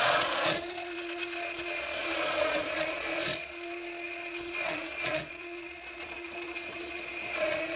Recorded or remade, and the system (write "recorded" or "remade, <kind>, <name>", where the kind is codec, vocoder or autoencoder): remade, vocoder, Vocos